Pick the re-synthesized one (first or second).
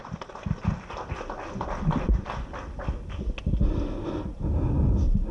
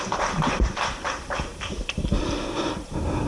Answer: second